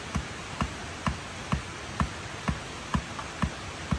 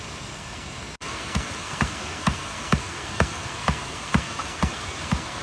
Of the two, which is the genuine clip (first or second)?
first